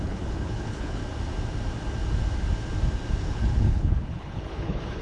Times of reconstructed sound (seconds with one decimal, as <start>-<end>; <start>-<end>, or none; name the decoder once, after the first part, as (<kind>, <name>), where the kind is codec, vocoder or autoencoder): 0.0-1.0 (codec, HILCodec); 3.2-5.0